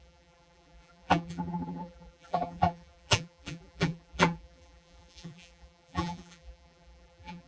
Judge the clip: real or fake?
fake